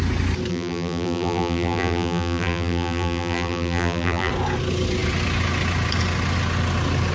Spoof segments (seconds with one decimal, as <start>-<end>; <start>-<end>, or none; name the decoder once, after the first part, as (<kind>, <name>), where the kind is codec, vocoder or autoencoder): 0.5-4.3 (vocoder, BigVGAN v2)